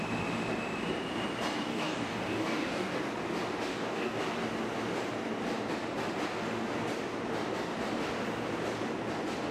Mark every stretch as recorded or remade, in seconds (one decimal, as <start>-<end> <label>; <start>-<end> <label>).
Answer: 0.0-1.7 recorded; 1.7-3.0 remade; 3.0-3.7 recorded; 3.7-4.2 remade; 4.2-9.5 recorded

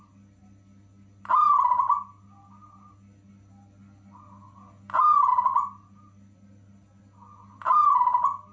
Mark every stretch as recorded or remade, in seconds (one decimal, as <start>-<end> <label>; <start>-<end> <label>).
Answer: 0.0-8.5 recorded

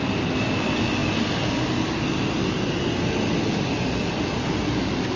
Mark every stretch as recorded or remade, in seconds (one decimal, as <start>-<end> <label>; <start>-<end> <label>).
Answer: 0.0-5.2 recorded